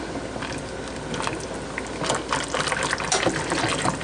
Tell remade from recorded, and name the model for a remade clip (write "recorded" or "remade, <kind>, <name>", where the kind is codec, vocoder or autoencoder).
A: recorded